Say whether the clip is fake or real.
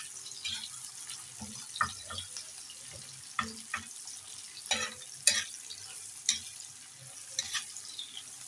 real